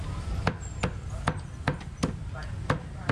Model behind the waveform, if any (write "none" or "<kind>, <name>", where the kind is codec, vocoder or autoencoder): none